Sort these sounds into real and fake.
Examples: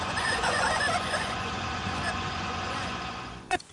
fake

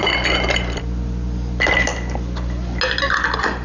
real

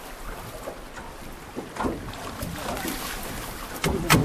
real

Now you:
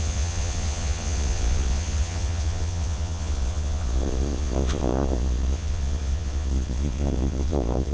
fake